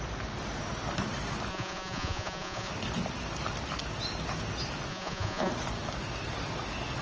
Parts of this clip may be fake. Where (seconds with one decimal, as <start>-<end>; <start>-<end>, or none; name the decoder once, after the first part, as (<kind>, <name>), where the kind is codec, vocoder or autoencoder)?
1.5-2.7 (vocoder, Vocos); 4.9-5.5